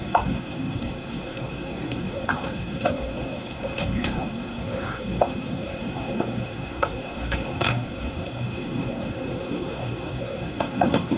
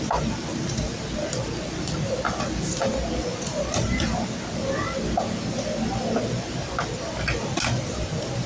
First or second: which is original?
second